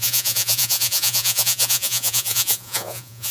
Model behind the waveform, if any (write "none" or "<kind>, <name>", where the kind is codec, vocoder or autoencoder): vocoder, Vocos